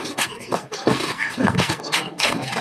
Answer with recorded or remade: remade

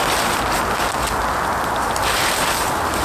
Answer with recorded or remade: recorded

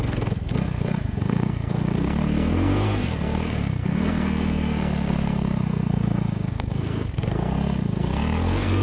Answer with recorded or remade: remade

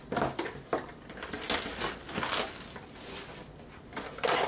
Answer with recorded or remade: recorded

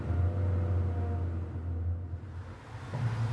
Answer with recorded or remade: recorded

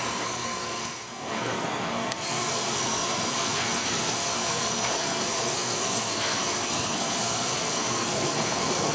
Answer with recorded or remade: remade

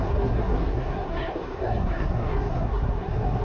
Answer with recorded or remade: remade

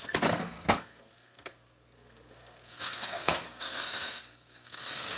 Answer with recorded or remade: remade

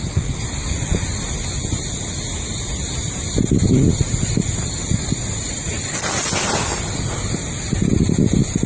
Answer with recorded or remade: recorded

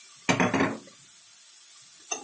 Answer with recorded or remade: recorded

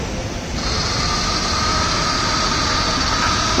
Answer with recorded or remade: recorded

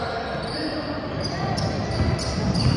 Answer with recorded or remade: recorded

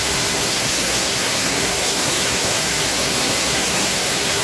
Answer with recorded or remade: remade